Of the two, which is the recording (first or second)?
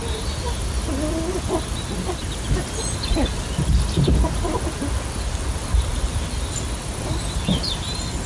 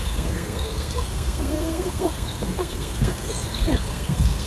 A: first